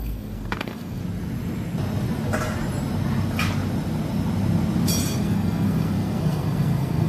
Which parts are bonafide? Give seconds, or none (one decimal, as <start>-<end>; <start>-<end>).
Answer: 1.0-5.2